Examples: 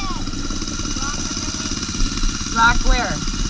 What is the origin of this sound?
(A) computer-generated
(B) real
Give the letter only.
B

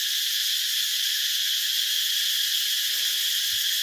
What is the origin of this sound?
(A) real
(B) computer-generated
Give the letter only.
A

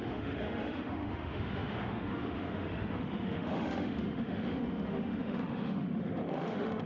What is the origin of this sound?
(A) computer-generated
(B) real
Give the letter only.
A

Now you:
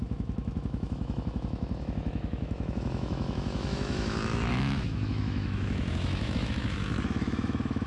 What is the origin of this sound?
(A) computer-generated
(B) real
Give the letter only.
A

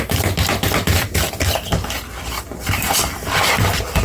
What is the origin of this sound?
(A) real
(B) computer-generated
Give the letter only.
A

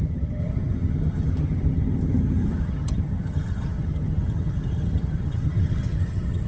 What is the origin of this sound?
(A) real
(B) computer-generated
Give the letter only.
B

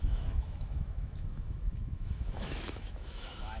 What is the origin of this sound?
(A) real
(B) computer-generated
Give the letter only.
B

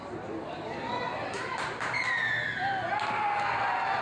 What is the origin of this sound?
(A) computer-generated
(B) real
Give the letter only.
B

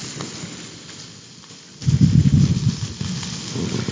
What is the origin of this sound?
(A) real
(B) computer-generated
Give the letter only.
A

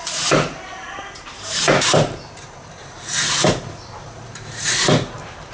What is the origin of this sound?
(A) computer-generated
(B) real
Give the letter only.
A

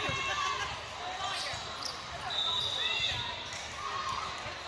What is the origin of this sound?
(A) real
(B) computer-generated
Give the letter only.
A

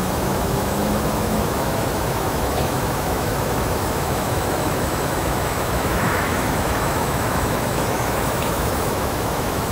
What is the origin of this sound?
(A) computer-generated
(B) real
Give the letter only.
A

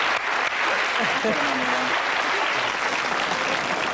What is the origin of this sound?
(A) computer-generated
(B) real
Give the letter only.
B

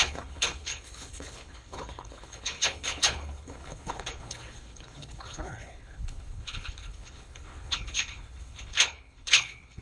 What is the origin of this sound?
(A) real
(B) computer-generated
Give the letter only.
B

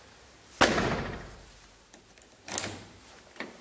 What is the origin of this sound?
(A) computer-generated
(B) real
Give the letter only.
B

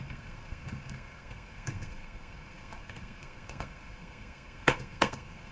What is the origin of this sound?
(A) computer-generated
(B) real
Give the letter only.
A